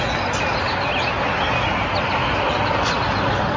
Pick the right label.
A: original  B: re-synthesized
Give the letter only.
A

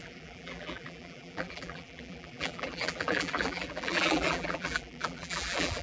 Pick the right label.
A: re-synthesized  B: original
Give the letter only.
A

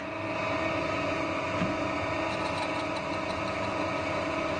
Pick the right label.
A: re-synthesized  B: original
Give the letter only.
B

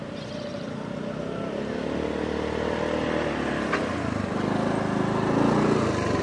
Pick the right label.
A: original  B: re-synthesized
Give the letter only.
A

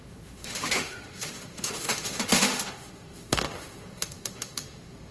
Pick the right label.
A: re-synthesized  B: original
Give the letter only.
A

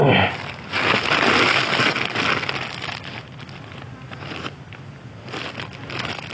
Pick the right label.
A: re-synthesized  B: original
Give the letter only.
B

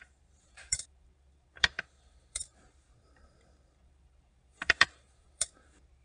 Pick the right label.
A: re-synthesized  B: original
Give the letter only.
A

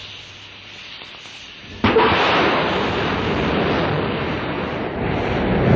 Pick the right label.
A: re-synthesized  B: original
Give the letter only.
B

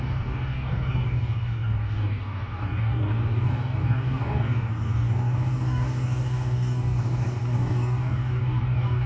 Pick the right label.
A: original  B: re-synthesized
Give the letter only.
B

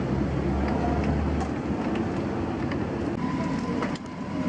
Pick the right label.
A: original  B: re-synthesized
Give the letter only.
A